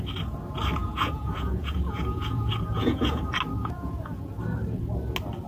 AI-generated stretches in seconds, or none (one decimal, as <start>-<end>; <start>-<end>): 0.8-3.2; 3.6-4.3